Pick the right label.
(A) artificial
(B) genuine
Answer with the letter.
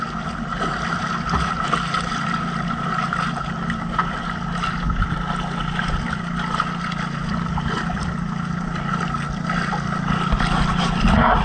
B